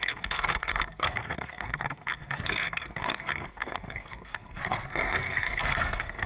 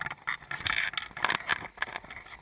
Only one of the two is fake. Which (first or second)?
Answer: first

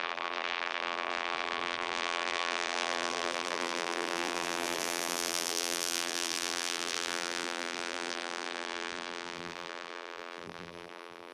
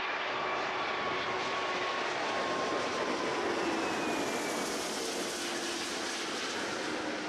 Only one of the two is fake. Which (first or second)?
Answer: first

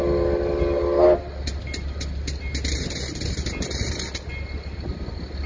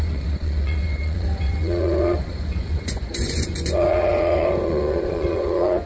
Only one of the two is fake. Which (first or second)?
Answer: second